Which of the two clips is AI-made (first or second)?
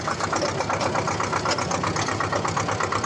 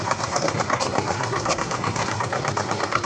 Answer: second